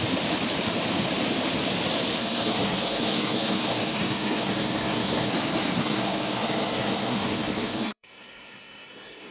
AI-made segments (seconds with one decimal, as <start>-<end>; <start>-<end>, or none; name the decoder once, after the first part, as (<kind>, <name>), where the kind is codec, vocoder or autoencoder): 2.2-5.3 (codec, SNAC); 5.8-9.3